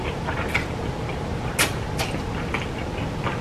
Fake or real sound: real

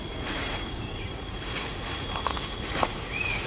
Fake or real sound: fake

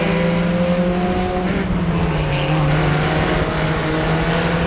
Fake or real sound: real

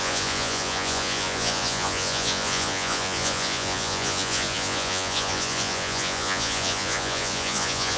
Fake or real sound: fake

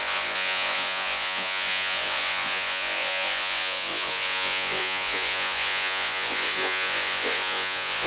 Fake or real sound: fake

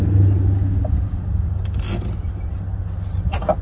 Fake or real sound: real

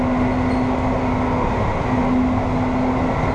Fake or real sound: real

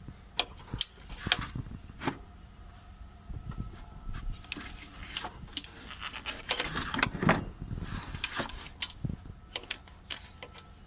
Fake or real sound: real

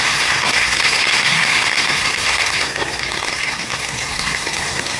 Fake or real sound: fake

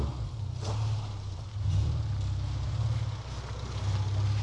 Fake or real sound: real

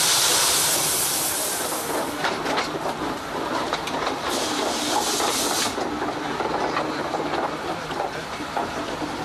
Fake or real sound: real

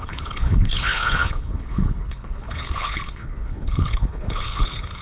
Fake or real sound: fake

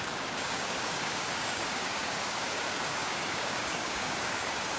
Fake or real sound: fake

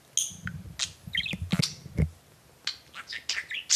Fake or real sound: real